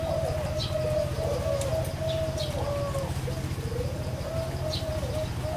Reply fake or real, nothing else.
real